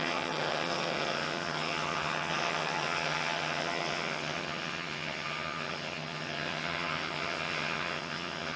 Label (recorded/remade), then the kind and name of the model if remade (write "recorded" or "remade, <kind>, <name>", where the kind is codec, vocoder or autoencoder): remade, vocoder, HiFi-GAN